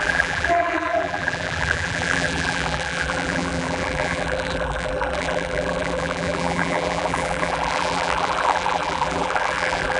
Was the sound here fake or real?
fake